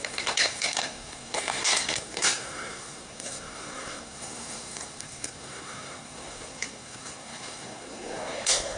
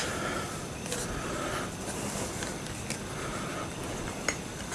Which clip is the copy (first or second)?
first